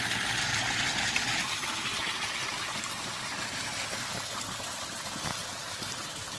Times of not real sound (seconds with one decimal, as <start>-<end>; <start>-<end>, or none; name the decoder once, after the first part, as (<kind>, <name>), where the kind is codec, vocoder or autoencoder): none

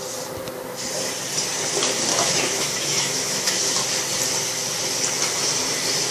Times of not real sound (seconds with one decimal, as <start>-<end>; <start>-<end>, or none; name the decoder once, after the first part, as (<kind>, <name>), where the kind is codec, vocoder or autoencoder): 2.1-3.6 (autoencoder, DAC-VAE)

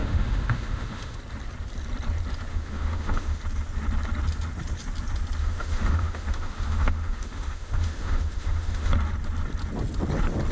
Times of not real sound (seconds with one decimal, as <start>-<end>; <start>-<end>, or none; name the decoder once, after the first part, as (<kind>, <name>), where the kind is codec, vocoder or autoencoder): 0.0-1.2 (autoencoder, DAC-VAE); 2.5-3.4; 5.4-8.9

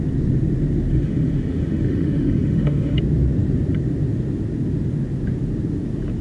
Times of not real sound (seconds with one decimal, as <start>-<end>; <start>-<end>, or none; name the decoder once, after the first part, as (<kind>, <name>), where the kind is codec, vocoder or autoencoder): 0.9-3.0 (autoencoder, DAC-VAE)

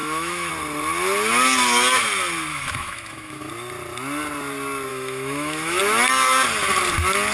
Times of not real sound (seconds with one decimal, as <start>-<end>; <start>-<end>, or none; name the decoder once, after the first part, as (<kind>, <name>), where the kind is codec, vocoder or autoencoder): 0.0-0.5 (autoencoder, DAC-VAE); 2.5-3.5; 4.9-5.8

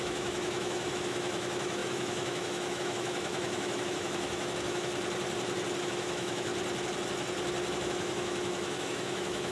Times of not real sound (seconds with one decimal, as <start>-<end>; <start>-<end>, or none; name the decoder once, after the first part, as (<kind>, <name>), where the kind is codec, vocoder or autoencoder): 0.0-4.9 (autoencoder, DAC-VAE); 5.8-6.5; 7.7-9.5

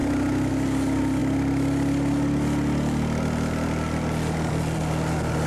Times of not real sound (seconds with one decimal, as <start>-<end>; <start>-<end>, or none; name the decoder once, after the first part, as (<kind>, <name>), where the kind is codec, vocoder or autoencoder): none

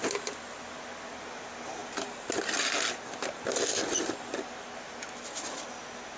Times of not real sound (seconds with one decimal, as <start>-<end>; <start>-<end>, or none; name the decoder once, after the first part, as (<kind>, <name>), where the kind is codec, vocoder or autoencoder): none